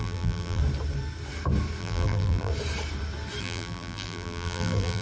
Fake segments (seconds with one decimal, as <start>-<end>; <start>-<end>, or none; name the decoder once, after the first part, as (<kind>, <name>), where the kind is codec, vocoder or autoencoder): 0.0-0.6 (vocoder, BigVGAN v2); 1.8-2.5; 3.4-5.0